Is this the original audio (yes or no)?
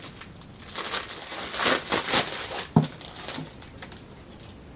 yes